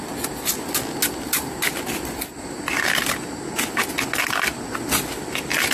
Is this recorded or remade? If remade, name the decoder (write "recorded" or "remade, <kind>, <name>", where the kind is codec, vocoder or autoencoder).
recorded